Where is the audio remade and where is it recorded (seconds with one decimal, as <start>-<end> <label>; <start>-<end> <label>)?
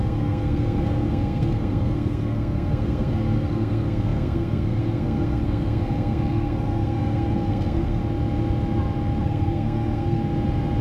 0.0-8.0 remade; 8.0-9.2 recorded; 9.2-10.2 remade; 10.2-10.8 recorded